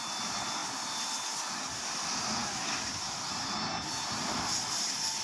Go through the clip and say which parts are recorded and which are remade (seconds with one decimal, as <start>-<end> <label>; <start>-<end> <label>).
0.0-5.2 recorded